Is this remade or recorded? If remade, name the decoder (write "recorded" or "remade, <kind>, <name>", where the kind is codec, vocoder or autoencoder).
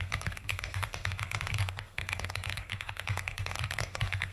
remade, codec, SNAC